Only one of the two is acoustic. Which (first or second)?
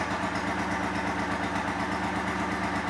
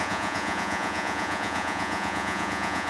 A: first